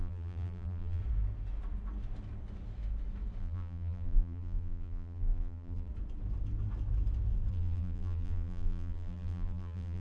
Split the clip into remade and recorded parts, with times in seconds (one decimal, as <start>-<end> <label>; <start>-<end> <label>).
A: 0.0-1.0 remade; 1.0-3.4 recorded; 3.4-5.9 remade; 5.9-7.5 recorded; 7.5-10.0 remade

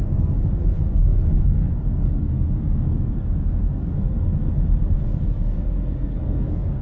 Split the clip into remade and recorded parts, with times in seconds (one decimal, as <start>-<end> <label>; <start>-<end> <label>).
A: 0.0-4.5 remade; 4.5-5.2 recorded; 5.2-6.8 remade

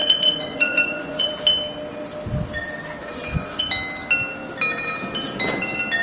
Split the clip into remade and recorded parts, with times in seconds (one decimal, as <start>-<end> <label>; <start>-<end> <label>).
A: 0.0-1.3 remade; 1.3-3.0 recorded; 3.0-3.6 remade; 3.6-6.0 recorded

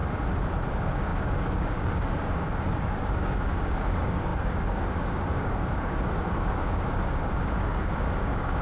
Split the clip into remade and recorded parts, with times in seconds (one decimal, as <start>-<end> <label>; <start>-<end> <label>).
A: 0.0-0.7 recorded; 0.7-8.6 remade